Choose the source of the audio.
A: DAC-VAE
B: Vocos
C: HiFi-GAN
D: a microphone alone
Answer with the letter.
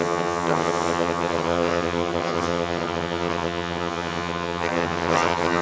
C